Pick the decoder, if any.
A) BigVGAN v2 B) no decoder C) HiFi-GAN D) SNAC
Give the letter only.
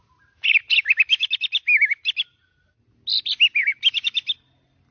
B